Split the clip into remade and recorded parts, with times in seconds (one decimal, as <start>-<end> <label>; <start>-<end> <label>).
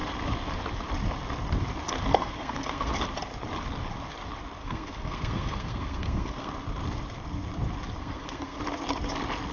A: 0.0-2.1 recorded; 2.1-2.9 remade; 2.9-4.6 recorded; 4.6-6.5 remade; 6.5-8.0 recorded; 8.0-8.6 remade; 8.6-9.5 recorded